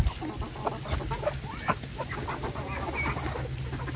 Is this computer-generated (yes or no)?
no